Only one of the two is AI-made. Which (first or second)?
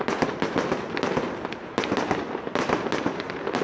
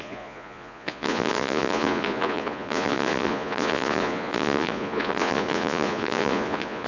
second